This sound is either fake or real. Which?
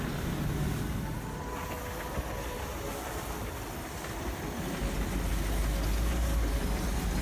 real